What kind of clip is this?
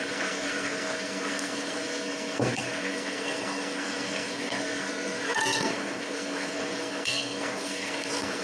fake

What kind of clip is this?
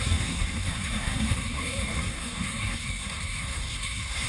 fake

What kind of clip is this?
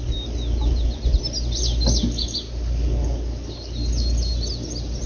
real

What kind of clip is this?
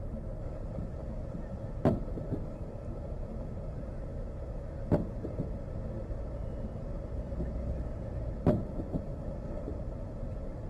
real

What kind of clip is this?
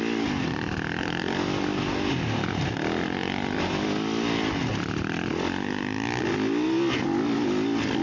real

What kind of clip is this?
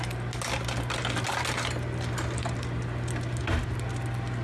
real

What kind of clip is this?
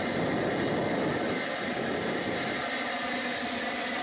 real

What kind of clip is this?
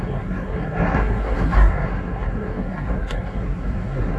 fake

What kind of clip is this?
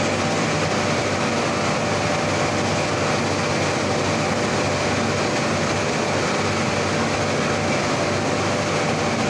real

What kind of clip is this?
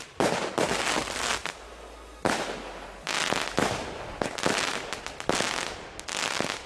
real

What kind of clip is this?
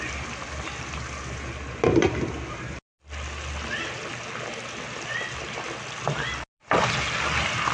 real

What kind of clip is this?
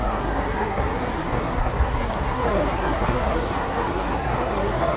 fake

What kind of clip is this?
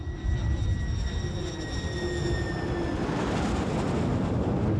real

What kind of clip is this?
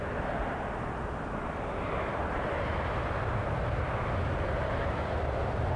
real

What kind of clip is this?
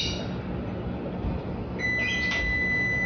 real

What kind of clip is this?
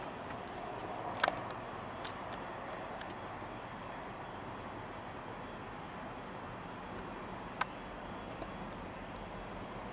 real